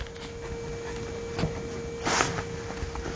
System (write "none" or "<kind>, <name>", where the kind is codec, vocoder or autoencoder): none